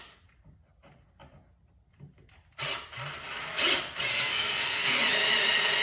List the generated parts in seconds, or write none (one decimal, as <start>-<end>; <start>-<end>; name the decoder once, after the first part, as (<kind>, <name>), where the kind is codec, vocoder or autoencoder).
4.1-5.0 (codec, SNAC)

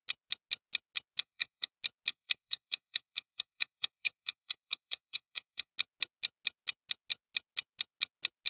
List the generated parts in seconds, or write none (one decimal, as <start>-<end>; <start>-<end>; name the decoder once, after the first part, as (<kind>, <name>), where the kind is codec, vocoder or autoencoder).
1.2-1.7 (codec, SNAC); 2.1-5.7

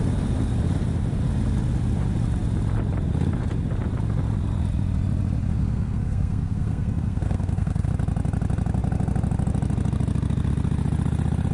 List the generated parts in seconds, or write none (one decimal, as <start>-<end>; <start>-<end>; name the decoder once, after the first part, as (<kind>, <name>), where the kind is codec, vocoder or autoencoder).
5.5-7.9 (codec, SNAC)

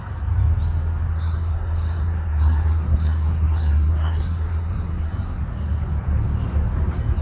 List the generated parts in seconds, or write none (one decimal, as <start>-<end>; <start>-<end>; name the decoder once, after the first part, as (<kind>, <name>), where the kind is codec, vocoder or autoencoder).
1.1-5.4 (codec, SNAC)